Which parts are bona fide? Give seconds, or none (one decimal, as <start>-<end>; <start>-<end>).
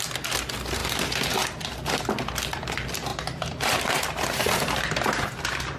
0.0-3.1; 4.0-5.8